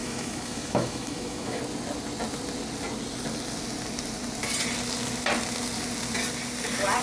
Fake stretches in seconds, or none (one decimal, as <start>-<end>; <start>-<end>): 0.0-1.6

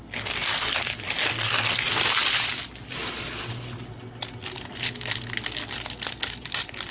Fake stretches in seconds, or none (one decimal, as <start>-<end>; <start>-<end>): none

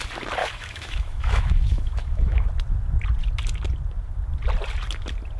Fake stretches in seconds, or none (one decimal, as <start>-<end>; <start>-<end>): 0.4-2.5

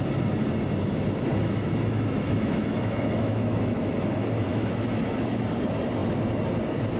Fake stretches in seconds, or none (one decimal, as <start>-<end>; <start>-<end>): 1.3-4.0; 4.5-5.4

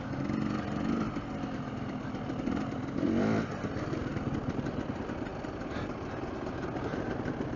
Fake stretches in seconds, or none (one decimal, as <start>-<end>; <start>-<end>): none